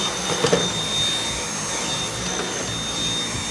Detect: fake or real real